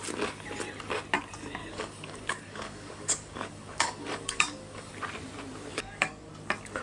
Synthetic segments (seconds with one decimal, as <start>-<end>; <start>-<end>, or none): 1.6-4.9; 5.7-6.3